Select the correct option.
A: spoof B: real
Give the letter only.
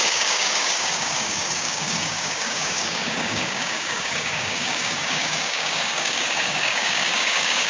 A